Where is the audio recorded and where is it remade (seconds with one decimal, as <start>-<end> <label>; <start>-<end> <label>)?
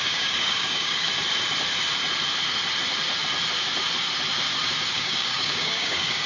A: 0.0-1.1 remade; 1.1-4.9 recorded; 4.9-6.3 remade